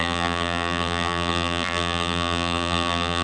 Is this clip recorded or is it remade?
remade